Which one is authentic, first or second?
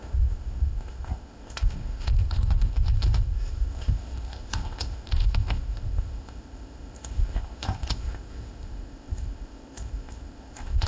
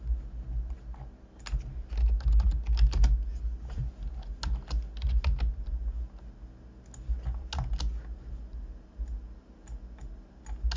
second